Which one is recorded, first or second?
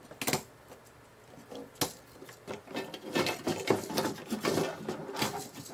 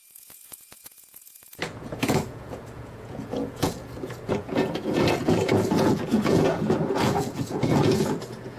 first